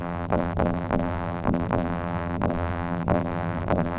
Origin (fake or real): fake